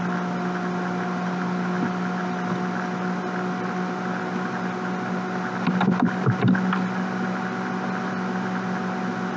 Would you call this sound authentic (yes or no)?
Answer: yes